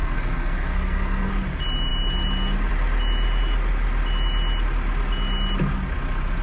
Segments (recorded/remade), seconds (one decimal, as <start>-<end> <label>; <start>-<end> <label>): 0.0-1.3 remade; 1.3-6.4 recorded